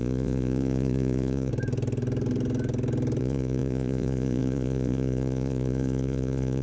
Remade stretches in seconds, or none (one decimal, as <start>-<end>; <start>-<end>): 0.0-1.5; 3.2-6.6